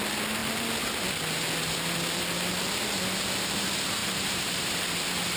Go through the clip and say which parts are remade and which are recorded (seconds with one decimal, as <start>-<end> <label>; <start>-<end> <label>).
0.0-4.0 recorded; 4.0-4.8 remade; 4.8-5.4 recorded